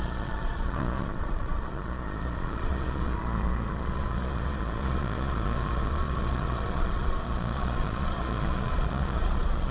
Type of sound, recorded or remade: remade